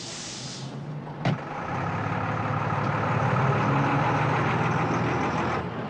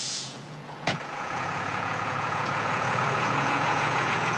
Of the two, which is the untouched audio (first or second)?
first